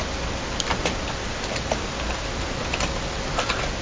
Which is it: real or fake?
real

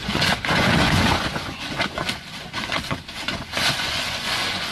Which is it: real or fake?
fake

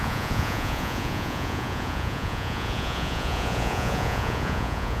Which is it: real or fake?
fake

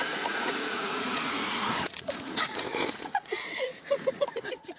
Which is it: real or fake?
fake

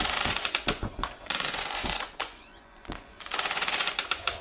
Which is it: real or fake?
fake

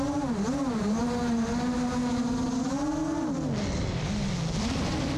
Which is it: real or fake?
real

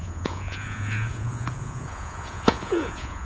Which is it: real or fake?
fake